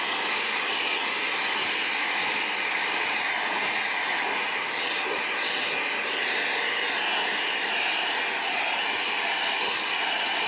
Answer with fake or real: real